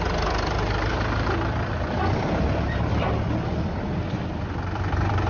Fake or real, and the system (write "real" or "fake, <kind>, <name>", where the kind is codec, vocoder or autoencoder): fake, vocoder, BigVGAN v2